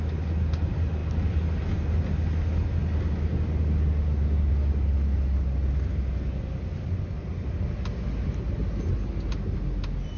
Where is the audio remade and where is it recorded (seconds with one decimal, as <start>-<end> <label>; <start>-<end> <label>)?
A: 0.0-10.2 recorded